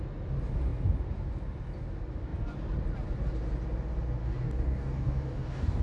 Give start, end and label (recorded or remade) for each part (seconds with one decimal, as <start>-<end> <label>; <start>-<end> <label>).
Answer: 0.0-4.2 recorded; 4.2-5.8 remade